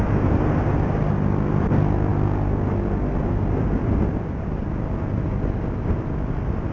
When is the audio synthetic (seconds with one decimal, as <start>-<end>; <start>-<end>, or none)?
none